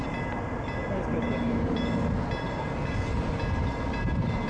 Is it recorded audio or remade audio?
recorded